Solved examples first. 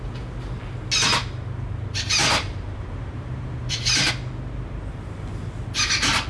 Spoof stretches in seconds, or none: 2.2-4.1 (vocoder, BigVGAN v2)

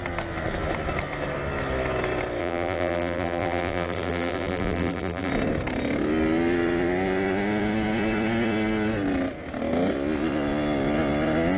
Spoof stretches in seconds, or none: 2.4-5.3 (vocoder, BigVGAN v2)

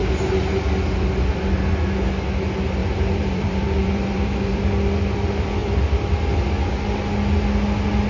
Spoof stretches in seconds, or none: 2.8-4.6 (vocoder, BigVGAN v2); 5.6-6.2

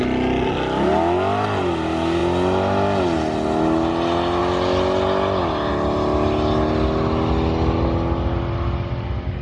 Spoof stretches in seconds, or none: none

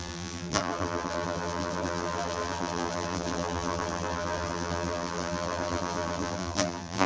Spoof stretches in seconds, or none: 0.0-7.1 (vocoder, BigVGAN v2)

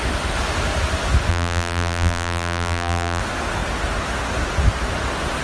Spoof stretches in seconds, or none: 1.3-3.2 (vocoder, BigVGAN v2)

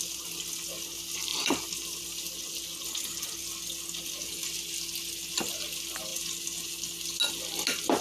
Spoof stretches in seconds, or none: 1.3-2.0 (vocoder, BigVGAN v2)

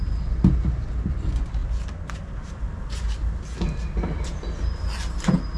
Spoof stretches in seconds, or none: none